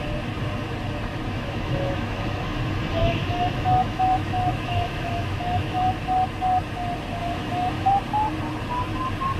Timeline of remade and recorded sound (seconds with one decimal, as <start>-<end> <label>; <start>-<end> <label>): 0.0-1.1 recorded; 1.1-2.6 remade; 2.6-3.0 recorded; 3.0-5.8 remade; 5.8-7.2 recorded; 7.2-7.9 remade; 7.9-9.4 recorded